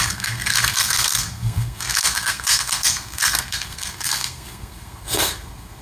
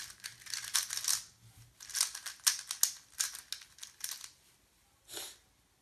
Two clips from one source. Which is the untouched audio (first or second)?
second